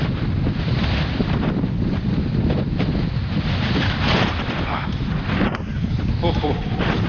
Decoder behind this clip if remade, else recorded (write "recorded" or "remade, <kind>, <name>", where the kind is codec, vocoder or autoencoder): remade, vocoder, BigVGAN v2